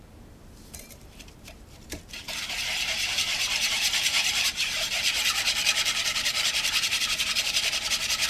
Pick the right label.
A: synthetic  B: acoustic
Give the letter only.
A